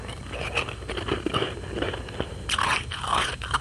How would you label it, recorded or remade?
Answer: recorded